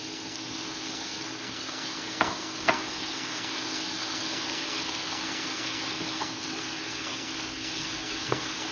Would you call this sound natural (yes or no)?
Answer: no